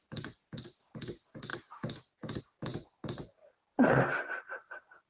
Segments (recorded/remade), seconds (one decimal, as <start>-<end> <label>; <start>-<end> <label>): 0.0-5.1 recorded